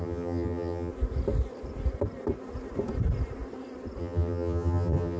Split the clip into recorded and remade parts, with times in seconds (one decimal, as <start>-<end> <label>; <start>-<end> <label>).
0.0-0.9 remade; 0.9-4.0 recorded; 4.0-5.2 remade